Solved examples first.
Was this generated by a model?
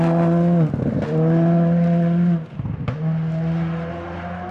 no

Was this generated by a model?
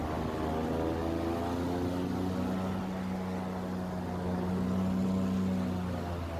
no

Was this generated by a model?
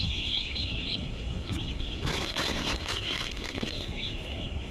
yes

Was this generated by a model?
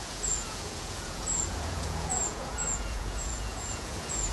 yes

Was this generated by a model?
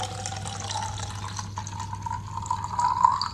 no